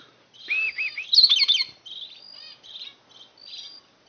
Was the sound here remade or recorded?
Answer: recorded